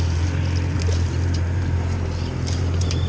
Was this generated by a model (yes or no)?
no